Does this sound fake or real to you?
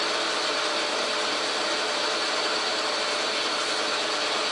real